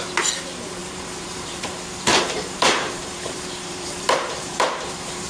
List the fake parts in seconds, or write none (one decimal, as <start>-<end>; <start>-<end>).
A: 0.8-1.6; 2.1-5.3